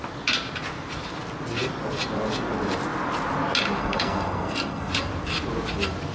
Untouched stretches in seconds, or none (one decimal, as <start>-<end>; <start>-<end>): 0.0-3.8; 4.9-6.1